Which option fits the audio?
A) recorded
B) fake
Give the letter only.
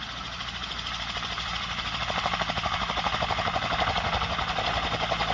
A